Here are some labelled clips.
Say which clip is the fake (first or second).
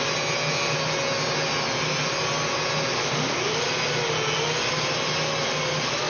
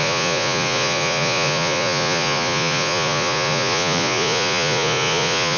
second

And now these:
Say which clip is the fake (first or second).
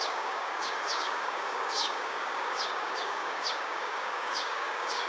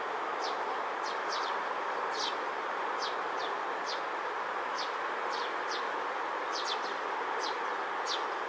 first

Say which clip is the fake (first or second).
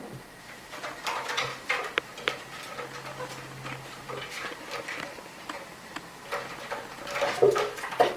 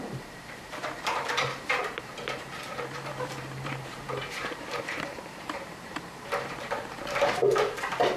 second